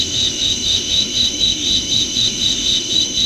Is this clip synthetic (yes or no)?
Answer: yes